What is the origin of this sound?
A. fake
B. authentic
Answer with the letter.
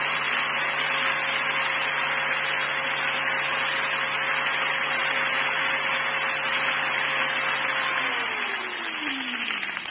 B